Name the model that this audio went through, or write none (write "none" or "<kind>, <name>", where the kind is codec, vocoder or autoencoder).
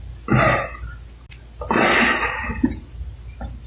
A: none